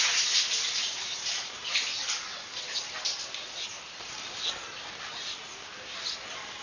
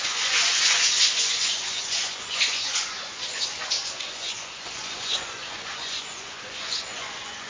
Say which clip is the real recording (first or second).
first